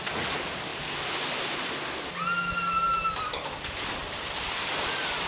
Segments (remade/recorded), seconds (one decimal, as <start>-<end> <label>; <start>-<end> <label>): 0.0-5.3 recorded